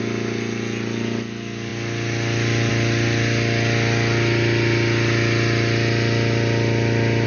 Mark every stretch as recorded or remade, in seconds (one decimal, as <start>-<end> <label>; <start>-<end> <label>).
0.0-7.3 recorded